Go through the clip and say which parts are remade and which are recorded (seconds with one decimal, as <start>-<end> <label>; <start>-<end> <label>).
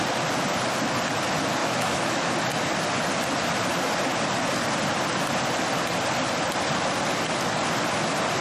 0.0-1.6 recorded; 1.6-2.3 remade; 2.3-8.4 recorded